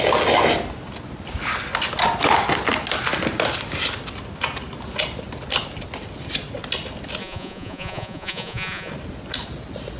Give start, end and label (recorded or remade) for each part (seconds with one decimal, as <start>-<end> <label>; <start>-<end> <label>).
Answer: 0.0-7.2 recorded; 7.2-8.9 remade; 8.9-10.0 recorded